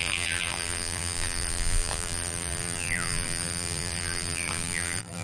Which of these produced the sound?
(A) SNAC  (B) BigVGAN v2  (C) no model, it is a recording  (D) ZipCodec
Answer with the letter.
B